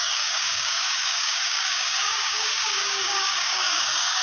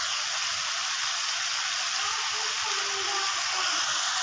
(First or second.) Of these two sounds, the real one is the second